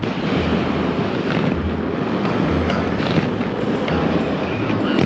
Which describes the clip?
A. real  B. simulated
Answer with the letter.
A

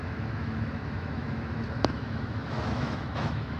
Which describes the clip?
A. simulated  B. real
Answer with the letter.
A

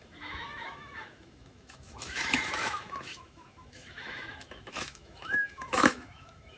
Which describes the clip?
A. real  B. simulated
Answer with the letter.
B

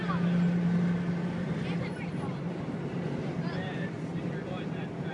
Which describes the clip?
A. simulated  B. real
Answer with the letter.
B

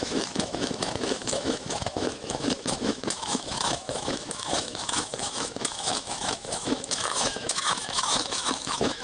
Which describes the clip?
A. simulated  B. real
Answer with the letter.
A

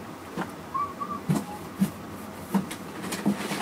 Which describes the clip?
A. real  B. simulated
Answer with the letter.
A